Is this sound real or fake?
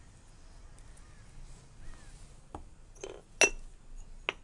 real